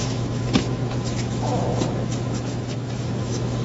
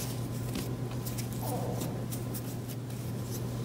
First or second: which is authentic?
second